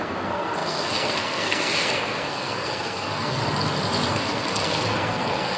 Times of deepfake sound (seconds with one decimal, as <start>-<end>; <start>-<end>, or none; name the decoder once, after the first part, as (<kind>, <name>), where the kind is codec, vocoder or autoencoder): 0.0-3.4 (codec, SNAC); 4.1-5.6